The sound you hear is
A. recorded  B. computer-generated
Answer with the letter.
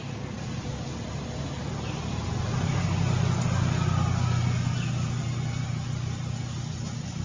A